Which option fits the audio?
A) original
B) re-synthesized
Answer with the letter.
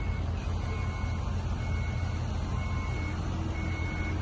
A